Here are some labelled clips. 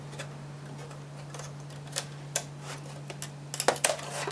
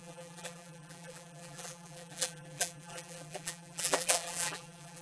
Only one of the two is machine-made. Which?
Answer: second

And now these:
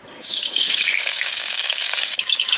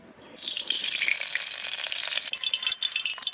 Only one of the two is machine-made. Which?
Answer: first